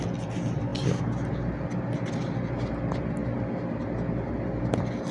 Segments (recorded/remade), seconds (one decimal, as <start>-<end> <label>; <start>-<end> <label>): 0.0-5.1 recorded